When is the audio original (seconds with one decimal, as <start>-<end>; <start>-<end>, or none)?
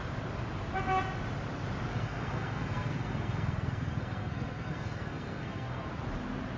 0.0-1.9; 5.9-6.6